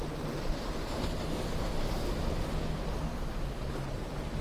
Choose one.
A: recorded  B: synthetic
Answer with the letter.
A